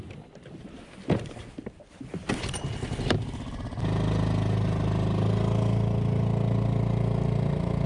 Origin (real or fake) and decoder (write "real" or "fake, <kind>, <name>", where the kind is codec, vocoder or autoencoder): real